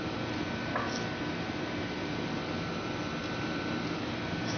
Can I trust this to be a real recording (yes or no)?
yes